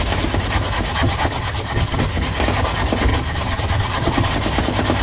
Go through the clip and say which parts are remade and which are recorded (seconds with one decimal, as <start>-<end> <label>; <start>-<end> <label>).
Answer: 0.0-0.9 recorded; 0.9-2.0 remade; 2.0-3.1 recorded; 3.1-4.3 remade; 4.3-5.0 recorded